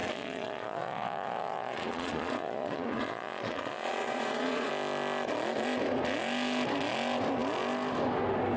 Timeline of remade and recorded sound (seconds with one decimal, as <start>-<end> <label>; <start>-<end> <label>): 0.0-4.7 remade; 4.7-8.6 recorded